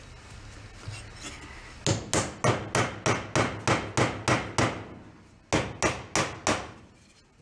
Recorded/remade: recorded